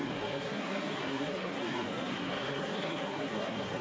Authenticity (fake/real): fake